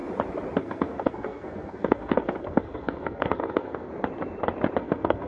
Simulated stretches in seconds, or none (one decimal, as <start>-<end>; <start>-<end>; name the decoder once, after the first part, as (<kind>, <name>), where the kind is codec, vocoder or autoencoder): 0.6-3.9 (codec, SNAC); 4.8-5.3